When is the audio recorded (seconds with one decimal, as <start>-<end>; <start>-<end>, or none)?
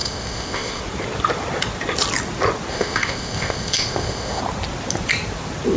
0.8-2.7; 4.4-5.8